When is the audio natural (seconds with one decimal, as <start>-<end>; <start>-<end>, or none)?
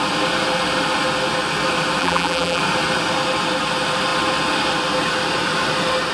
0.0-2.0; 2.6-6.1